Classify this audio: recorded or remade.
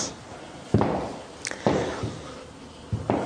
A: recorded